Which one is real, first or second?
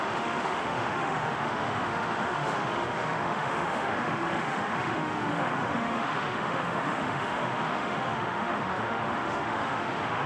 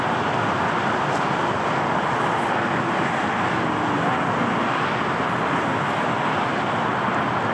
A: second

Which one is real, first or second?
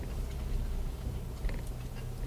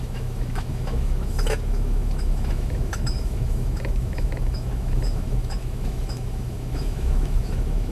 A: first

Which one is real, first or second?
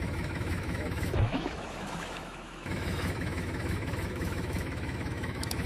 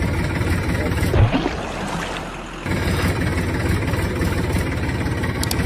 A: second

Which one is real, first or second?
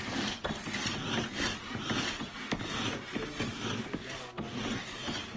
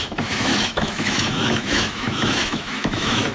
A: first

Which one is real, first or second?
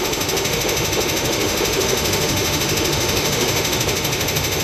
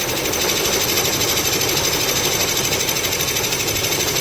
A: second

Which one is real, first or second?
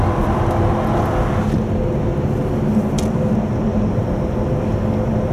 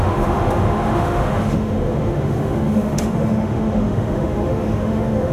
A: first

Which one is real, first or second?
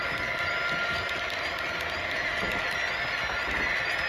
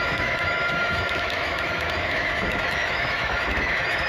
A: first